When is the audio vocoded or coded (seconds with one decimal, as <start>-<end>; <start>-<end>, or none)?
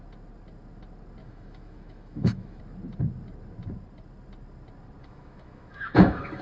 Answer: 1.2-2.6; 5.0-6.4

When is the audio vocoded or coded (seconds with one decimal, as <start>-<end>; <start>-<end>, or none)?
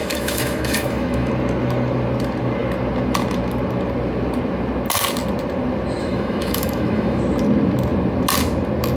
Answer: 0.0-1.3; 6.0-7.2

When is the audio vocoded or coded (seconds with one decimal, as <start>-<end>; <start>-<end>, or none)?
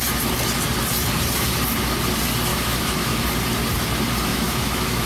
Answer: 2.5-3.2; 4.3-5.1